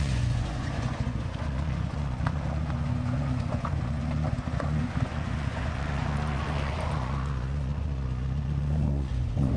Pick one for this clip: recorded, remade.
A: remade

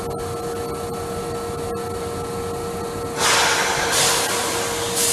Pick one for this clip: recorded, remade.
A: recorded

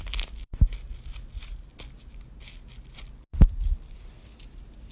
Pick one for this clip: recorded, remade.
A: recorded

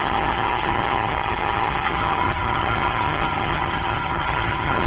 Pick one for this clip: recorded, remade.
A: remade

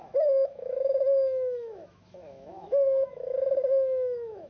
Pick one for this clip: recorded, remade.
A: remade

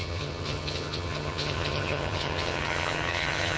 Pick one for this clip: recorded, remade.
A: remade